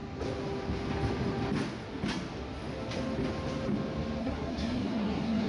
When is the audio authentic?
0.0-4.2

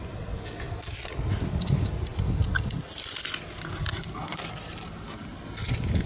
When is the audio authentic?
0.0-6.1